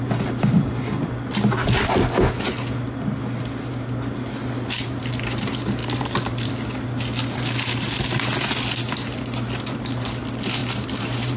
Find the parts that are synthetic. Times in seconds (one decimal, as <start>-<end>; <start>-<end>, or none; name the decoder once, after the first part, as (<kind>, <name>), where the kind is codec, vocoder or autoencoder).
5.8-6.5 (vocoder, BigVGAN v2); 10.6-11.4